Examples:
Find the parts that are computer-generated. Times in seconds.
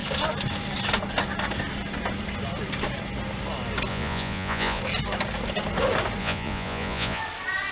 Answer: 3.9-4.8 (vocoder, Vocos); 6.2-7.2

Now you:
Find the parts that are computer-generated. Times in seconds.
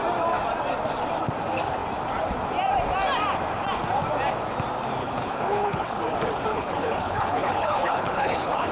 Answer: 5.0-6.0 (codec, HILCodec); 6.5-8.7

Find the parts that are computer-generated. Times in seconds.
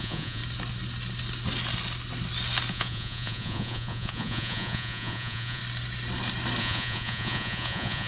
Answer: 0.0-0.4 (vocoder, Vocos); 2.7-5.6; 6.6-8.1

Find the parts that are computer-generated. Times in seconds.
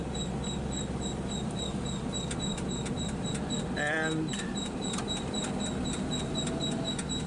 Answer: 2.5-3.3 (vocoder, BigVGAN v2); 4.5-5.5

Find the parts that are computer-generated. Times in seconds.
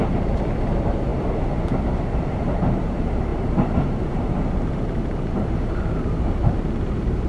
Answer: 0.0-7.3 (vocoder, BigVGAN v2)